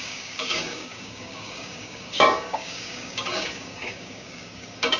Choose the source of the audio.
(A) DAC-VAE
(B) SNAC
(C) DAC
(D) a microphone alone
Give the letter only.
C